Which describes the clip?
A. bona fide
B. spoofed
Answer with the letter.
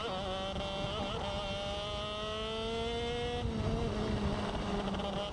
A